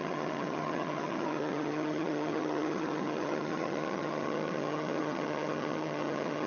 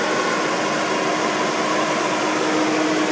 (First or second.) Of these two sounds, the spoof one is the first